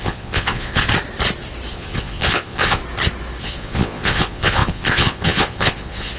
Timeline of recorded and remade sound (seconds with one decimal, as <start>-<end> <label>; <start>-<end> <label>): 0.0-0.8 remade; 0.8-1.7 recorded; 1.7-2.8 remade; 2.8-3.4 recorded; 3.4-6.2 remade